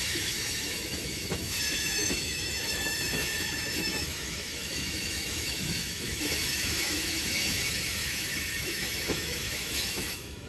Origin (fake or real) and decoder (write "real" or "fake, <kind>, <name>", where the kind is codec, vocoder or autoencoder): fake, autoencoder, DAC-VAE